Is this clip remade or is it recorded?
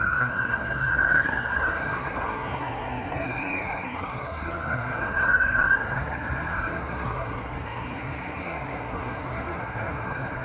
remade